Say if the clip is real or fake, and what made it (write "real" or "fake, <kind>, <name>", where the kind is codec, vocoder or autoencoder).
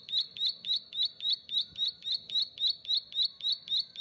real